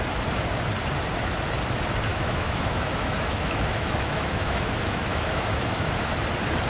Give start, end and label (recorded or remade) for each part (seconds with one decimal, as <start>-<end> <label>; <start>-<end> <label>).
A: 0.0-2.1 recorded; 2.1-6.1 remade; 6.1-6.7 recorded